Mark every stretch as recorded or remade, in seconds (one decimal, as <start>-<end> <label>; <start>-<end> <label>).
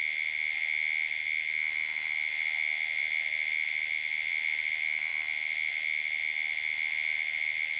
0.0-7.8 recorded